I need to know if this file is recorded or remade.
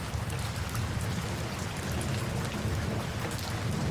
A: recorded